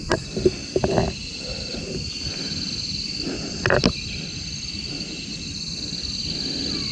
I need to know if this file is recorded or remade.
recorded